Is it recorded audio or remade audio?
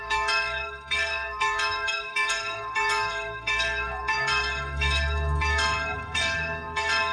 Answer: remade